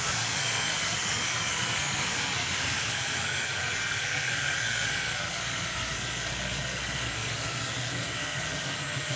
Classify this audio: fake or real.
fake